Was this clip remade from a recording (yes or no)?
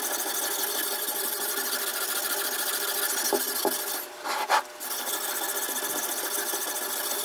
no